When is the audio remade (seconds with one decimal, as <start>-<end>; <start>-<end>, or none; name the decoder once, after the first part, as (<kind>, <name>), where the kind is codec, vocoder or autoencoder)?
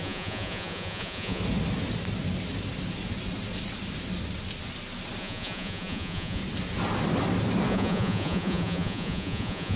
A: 0.0-1.4 (vocoder, Vocos); 5.2-6.4; 7.7-9.8